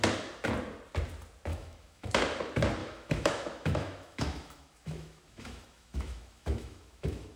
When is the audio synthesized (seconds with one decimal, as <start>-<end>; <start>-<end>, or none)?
1.5-2.1; 2.8-7.4